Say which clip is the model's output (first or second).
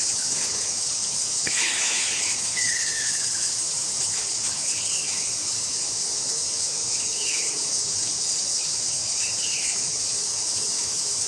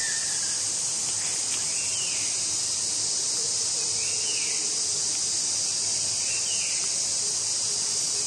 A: first